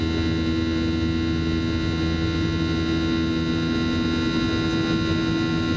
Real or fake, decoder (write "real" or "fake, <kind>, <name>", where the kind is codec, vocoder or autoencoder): real